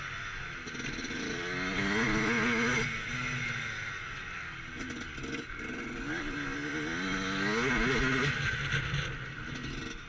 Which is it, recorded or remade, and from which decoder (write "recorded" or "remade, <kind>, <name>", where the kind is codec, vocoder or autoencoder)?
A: recorded